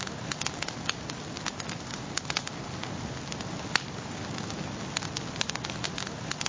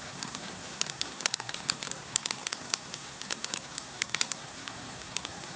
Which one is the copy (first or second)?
second